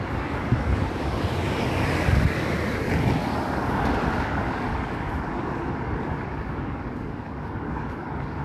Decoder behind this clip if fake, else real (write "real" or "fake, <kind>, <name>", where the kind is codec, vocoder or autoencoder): fake, codec, DAC